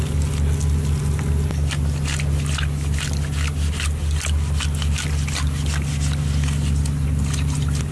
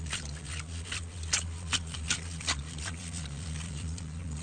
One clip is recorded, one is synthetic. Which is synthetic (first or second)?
second